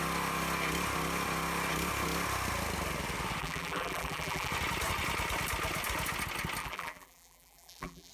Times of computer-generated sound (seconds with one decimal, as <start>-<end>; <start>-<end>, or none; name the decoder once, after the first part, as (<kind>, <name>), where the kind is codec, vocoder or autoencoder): 3.4-4.5 (vocoder, BigVGAN v2); 6.6-8.1